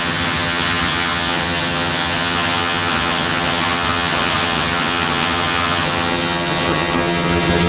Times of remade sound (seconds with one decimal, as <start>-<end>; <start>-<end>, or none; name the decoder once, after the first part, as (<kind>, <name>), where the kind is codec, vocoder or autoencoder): 0.0-7.7 (vocoder, HiFi-GAN)